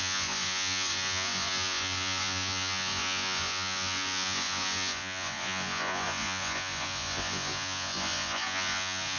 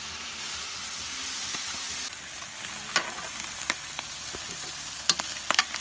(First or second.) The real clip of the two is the second